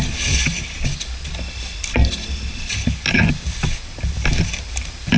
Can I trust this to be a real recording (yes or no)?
yes